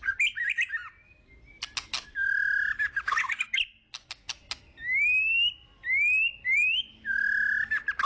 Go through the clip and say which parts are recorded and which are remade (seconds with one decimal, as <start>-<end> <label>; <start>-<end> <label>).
0.0-6.3 recorded; 6.3-7.1 remade; 7.1-8.1 recorded